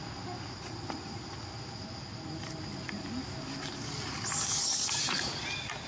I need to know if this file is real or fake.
real